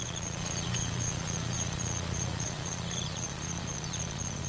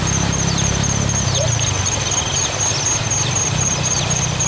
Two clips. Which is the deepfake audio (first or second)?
first